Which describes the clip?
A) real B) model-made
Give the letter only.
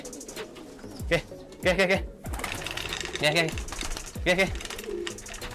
A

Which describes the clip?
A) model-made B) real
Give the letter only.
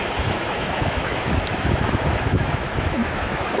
A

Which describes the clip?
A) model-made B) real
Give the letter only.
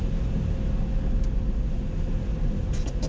B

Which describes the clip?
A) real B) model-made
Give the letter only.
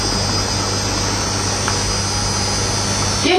A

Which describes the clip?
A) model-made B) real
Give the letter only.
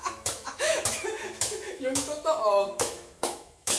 A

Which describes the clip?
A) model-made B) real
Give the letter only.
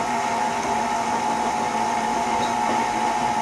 B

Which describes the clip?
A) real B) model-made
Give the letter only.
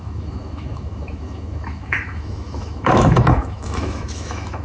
B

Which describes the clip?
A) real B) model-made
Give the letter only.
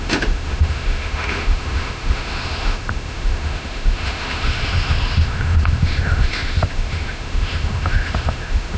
B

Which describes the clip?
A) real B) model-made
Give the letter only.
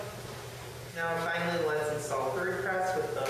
A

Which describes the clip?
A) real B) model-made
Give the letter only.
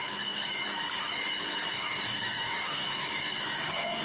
B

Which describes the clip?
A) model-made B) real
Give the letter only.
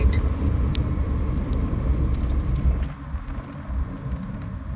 B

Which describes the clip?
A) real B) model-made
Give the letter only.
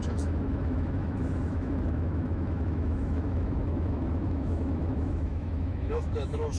B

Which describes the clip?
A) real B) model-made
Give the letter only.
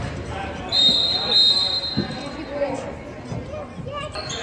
A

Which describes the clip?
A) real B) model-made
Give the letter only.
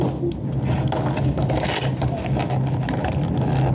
A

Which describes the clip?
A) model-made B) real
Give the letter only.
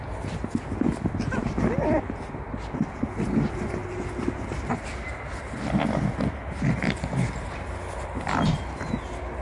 B